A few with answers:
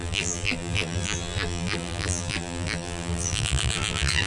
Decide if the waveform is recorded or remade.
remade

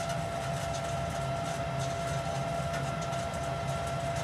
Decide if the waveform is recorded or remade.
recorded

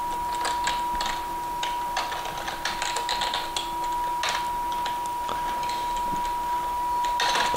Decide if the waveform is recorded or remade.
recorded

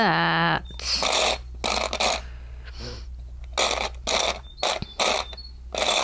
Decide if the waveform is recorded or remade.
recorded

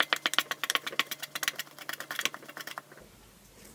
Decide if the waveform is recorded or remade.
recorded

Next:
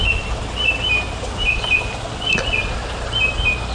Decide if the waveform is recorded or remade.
recorded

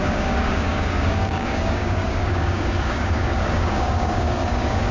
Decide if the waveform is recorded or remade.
remade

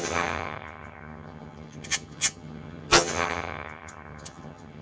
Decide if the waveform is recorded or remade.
remade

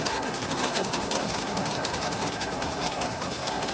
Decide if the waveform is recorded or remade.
remade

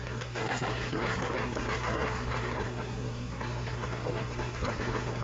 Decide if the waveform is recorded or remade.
remade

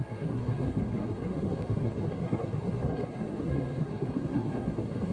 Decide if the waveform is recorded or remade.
remade